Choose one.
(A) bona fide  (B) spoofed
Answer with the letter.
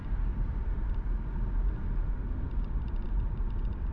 A